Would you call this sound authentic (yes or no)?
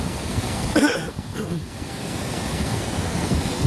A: no